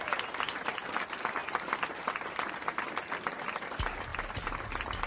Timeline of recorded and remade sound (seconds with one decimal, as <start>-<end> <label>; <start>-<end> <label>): 0.0-5.1 recorded